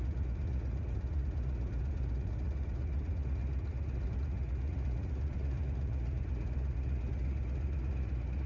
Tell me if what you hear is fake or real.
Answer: fake